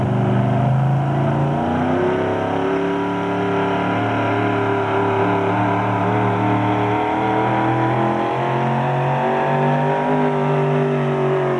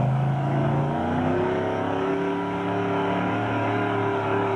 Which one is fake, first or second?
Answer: second